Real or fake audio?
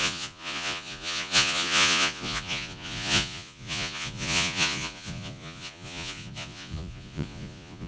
fake